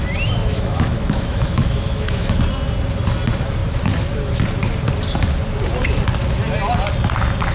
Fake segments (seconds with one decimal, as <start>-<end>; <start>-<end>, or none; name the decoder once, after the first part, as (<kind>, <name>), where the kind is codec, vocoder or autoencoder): 0.4-2.4 (autoencoder, DAC-VAE)